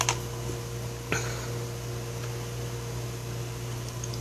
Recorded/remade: recorded